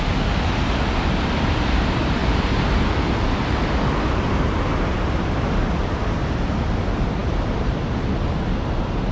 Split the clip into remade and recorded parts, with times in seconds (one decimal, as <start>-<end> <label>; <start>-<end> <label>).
0.0-9.1 recorded